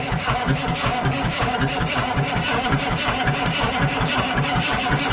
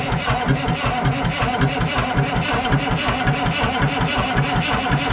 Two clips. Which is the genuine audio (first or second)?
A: second